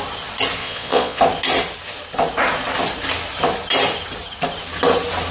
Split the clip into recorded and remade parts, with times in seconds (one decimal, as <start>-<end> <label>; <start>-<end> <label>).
0.0-0.6 recorded; 0.6-1.2 remade; 1.2-5.3 recorded